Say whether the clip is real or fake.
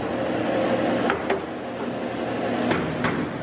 real